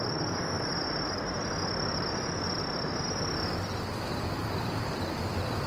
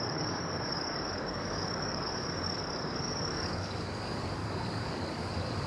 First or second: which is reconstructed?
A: second